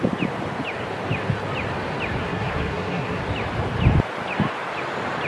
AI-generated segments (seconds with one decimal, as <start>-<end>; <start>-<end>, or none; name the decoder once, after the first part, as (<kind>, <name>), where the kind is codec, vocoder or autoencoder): 2.2-3.2 (codec, SNAC)